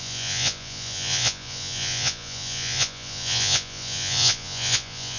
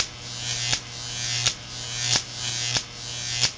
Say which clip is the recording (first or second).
second